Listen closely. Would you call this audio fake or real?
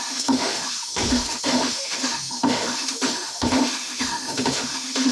fake